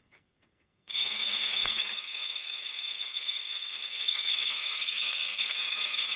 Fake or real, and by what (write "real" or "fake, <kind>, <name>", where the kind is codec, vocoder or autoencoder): fake, codec, SNAC